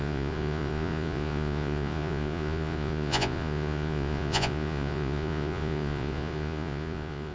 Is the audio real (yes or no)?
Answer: no